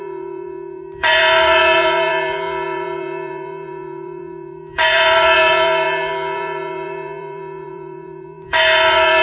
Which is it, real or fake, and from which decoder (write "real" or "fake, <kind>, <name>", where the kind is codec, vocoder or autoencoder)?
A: fake, vocoder, BigVGAN v2